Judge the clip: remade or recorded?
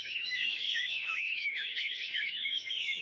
remade